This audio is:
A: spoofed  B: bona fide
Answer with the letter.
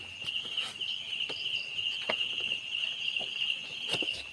B